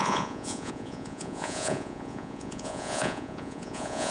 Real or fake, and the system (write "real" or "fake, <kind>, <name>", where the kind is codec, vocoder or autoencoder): fake, vocoder, Vocos